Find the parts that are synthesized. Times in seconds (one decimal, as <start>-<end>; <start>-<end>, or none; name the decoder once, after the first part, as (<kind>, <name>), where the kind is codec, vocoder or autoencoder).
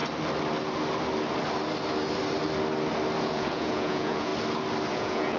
3.2-4.3 (vocoder, Vocos); 4.9-5.4